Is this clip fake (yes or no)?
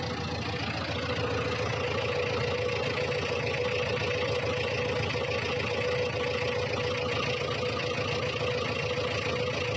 no